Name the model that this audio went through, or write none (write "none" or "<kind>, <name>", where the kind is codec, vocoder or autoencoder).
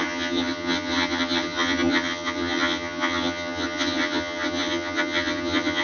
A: vocoder, HiFi-GAN